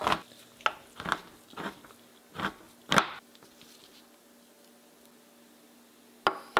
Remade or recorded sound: recorded